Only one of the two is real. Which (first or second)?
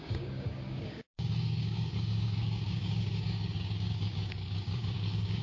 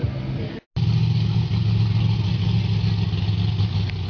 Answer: second